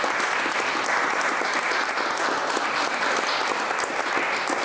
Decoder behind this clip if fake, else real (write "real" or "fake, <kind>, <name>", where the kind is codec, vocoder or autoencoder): real